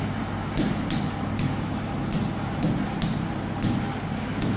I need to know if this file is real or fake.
real